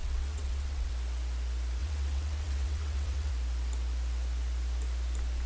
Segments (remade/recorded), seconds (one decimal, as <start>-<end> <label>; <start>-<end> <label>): 0.0-0.9 remade; 0.9-1.8 recorded; 1.8-3.3 remade; 3.3-5.5 recorded